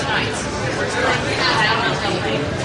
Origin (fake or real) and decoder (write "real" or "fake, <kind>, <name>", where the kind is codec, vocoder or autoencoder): real